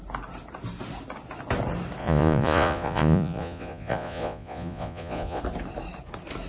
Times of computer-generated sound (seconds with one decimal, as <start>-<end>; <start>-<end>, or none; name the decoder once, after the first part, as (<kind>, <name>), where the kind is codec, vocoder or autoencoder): 2.0-5.4 (vocoder, Vocos)